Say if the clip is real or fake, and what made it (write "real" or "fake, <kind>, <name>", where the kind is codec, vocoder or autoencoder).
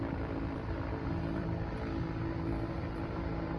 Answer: fake, vocoder, BigVGAN v2